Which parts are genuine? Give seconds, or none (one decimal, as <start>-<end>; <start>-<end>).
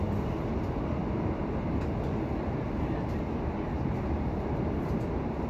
0.0-5.5